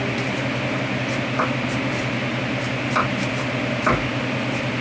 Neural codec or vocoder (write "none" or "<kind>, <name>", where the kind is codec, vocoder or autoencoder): none